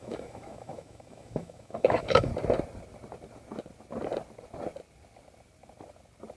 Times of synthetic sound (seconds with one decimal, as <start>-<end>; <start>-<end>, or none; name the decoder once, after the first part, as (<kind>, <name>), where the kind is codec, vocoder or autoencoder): 0.0-2.3 (autoencoder, DAC-VAE)